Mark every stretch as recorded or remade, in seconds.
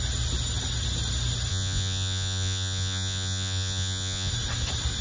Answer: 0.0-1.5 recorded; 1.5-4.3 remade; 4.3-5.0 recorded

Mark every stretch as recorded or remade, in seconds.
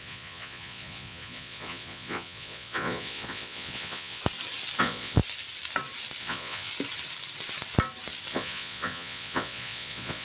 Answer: 0.0-4.2 remade; 4.2-4.8 recorded; 4.8-5.2 remade; 5.2-6.2 recorded; 6.2-6.7 remade; 6.7-8.3 recorded; 8.3-10.2 remade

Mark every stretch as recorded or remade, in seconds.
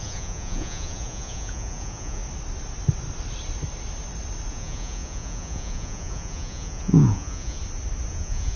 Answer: 0.0-2.2 remade; 2.2-4.5 recorded; 4.5-7.6 remade; 7.6-8.1 recorded; 8.1-8.6 remade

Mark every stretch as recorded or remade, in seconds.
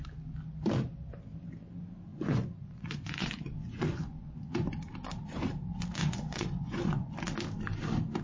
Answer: 0.0-2.1 recorded; 2.1-4.7 remade; 4.7-6.0 recorded; 6.0-7.1 remade; 7.1-8.2 recorded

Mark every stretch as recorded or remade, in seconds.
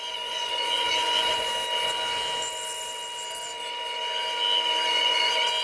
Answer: 0.0-1.5 remade; 1.5-4.9 recorded; 4.9-5.6 remade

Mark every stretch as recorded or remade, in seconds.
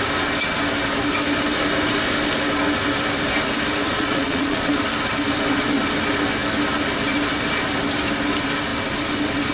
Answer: 0.0-3.8 recorded; 3.8-4.7 remade; 4.7-9.5 recorded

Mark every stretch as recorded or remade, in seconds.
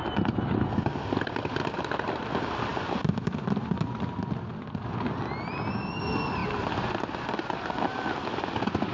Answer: 0.0-8.9 recorded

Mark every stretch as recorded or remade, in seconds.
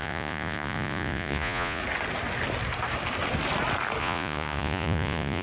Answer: 0.0-1.8 remade; 1.8-4.0 recorded; 4.0-5.4 remade